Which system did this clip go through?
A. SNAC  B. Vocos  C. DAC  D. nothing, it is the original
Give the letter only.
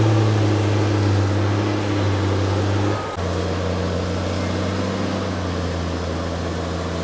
D